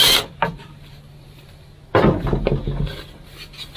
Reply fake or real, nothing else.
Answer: real